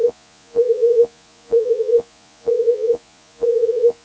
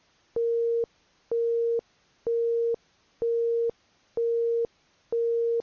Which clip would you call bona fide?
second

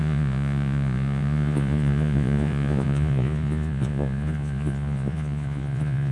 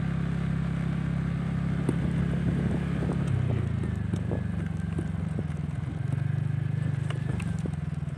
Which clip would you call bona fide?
second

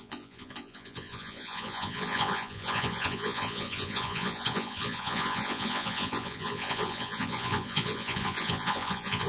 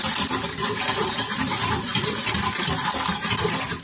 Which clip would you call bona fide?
second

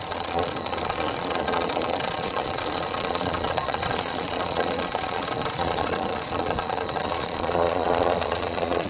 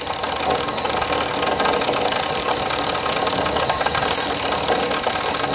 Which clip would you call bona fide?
second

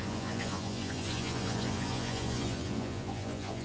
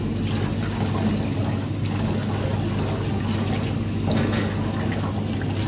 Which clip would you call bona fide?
second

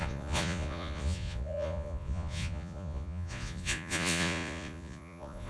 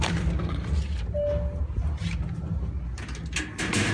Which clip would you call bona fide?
second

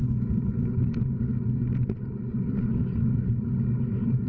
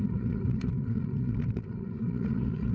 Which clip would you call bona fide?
first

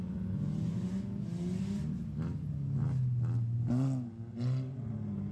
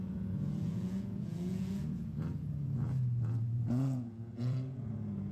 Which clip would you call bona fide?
first